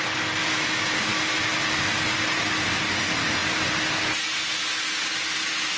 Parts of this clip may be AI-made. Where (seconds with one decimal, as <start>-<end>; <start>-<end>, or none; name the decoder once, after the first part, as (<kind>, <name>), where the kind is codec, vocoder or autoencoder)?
none